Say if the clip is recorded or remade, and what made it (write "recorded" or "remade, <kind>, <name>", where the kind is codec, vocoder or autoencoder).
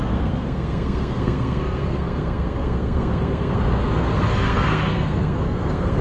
remade, codec, SNAC